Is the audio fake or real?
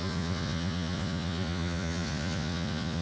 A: fake